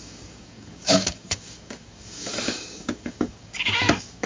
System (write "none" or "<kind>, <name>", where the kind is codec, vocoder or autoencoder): codec, DAC